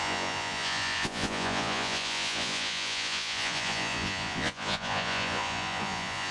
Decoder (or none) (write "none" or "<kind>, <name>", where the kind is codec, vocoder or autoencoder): vocoder, Vocos